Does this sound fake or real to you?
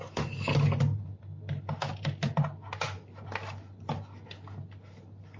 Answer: real